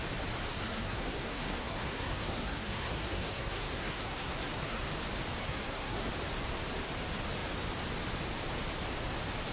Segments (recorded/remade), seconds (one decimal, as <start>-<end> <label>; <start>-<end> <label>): 0.0-0.5 recorded; 0.5-4.8 remade; 4.8-5.4 recorded; 5.4-6.1 remade; 6.1-9.5 recorded